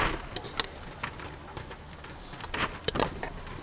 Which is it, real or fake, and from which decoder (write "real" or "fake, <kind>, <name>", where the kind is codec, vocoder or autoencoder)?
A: real